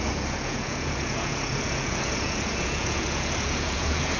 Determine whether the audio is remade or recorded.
remade